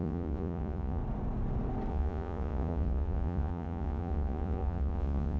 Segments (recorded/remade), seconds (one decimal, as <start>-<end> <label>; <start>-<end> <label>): 0.0-1.0 remade; 1.0-1.9 recorded; 1.9-5.4 remade